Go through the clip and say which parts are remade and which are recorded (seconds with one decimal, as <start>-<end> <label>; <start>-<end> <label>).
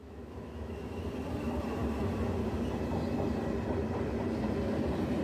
0.0-1.0 remade; 1.0-5.2 recorded